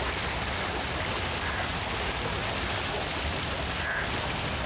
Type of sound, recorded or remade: recorded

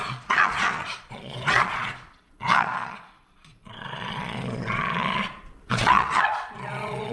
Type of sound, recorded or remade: remade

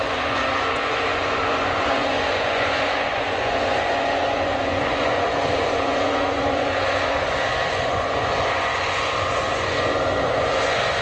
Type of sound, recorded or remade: remade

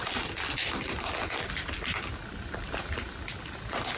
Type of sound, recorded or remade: recorded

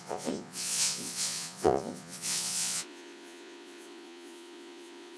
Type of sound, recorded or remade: remade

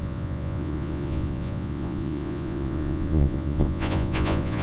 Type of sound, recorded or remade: remade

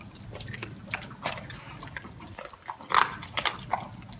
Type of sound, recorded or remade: recorded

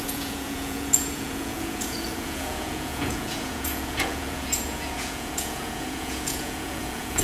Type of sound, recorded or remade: remade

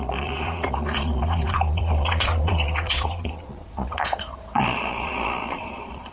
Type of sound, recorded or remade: remade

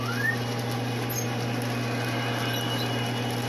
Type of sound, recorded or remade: recorded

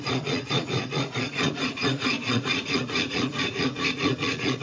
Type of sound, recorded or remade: remade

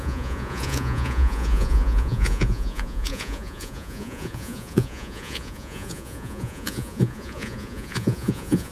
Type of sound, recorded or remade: remade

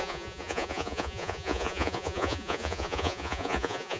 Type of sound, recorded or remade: remade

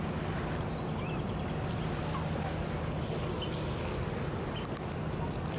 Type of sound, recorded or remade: recorded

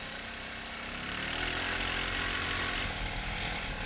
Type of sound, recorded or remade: recorded